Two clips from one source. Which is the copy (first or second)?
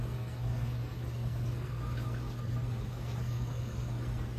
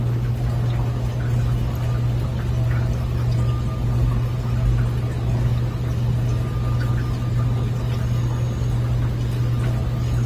first